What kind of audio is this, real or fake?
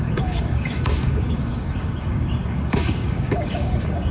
fake